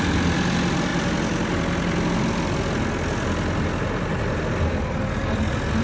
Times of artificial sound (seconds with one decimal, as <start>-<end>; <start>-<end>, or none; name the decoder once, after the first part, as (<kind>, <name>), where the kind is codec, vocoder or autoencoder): none